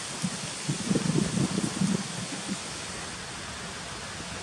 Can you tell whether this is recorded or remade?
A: recorded